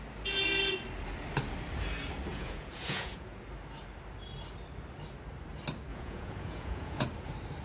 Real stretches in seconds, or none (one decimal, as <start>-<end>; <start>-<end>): 0.0-2.3; 3.4-5.9; 7.0-7.6